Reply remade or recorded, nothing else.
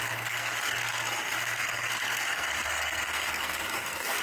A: remade